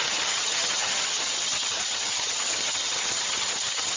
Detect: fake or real fake